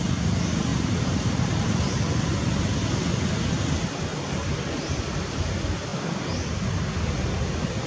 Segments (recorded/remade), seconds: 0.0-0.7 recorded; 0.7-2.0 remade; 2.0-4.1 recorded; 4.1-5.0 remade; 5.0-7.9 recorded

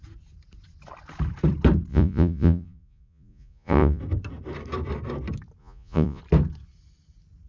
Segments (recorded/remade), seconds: 0.0-1.9 recorded; 1.9-4.0 remade; 4.0-5.6 recorded; 5.6-6.2 remade; 6.2-7.5 recorded

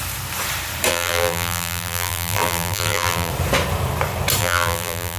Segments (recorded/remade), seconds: 0.0-0.9 recorded; 0.9-3.3 remade; 3.3-4.4 recorded; 4.4-5.2 remade

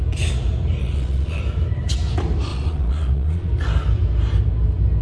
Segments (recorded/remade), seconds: 0.0-0.8 recorded; 0.8-1.4 remade; 1.4-2.5 recorded; 2.5-3.5 remade; 3.5-5.0 recorded

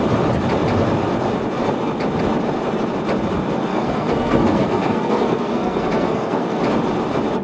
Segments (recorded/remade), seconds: 0.0-3.7 recorded; 3.7-6.6 remade; 6.6-7.4 recorded

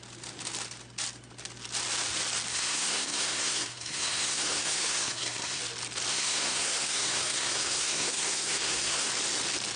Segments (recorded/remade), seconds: 0.0-2.5 recorded; 2.5-5.6 remade; 5.6-6.1 recorded; 6.1-9.1 remade; 9.1-9.8 recorded

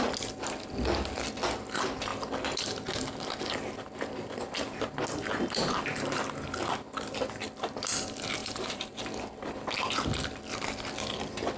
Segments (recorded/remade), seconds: 0.0-8.4 recorded; 8.4-9.0 remade; 9.0-11.6 recorded